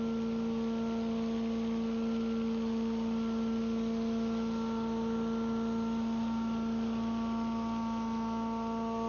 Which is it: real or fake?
real